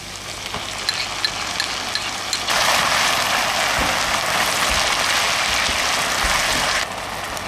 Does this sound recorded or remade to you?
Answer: recorded